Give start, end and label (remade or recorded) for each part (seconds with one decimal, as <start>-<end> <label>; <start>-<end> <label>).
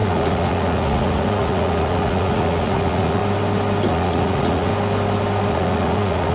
0.0-3.2 remade; 3.2-3.9 recorded; 3.9-4.7 remade; 4.7-5.5 recorded; 5.5-6.3 remade